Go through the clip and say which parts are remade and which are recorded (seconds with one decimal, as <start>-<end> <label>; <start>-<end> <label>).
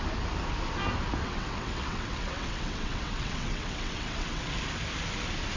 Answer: 0.0-1.2 recorded; 1.2-4.6 remade; 4.6-5.6 recorded